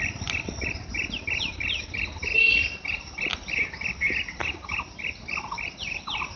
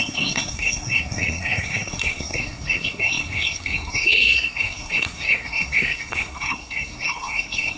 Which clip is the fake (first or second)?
second